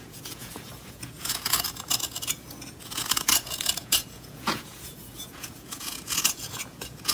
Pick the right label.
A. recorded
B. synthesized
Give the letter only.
B